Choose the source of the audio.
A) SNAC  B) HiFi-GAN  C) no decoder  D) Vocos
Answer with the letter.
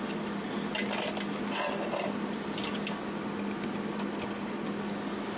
C